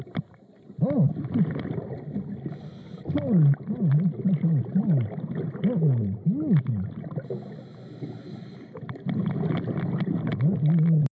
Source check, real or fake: real